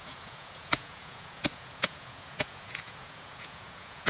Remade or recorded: remade